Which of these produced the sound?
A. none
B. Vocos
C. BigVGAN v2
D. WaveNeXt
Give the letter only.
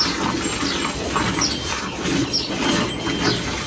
A